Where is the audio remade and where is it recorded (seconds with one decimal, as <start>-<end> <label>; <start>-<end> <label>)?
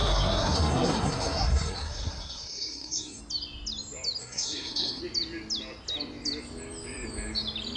0.0-3.2 remade; 3.2-4.2 recorded; 4.2-5.0 remade; 5.0-7.8 recorded